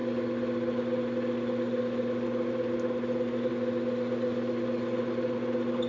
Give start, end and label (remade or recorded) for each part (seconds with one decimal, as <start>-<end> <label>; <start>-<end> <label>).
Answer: 0.0-5.9 recorded

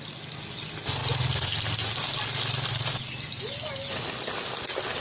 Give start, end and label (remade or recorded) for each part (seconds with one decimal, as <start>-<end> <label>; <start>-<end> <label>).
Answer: 0.0-5.0 recorded

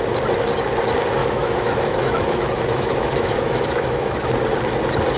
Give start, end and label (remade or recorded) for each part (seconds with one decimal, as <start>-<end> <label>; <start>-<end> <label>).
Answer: 0.0-1.2 recorded; 1.2-4.3 remade; 4.3-5.2 recorded

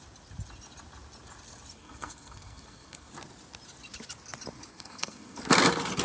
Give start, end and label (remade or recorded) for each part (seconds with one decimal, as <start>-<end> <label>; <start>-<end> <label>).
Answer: 0.0-1.7 recorded; 1.7-3.1 remade; 3.1-4.7 recorded; 4.7-5.4 remade; 5.4-6.0 recorded

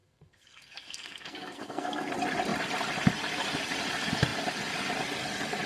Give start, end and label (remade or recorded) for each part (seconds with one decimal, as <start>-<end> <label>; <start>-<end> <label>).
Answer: 0.0-2.1 remade; 2.1-5.7 recorded

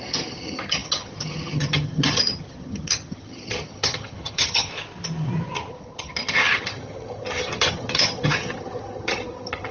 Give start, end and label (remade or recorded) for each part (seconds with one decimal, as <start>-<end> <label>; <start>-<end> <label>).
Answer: 0.0-4.7 remade; 4.7-5.7 recorded; 5.7-9.7 remade

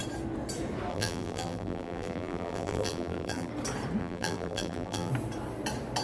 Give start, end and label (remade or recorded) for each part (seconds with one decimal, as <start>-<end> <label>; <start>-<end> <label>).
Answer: 0.0-0.9 recorded; 0.9-3.5 remade; 3.5-4.0 recorded; 4.0-5.1 remade; 5.1-6.0 recorded